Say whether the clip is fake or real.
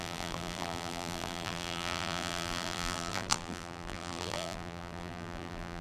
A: fake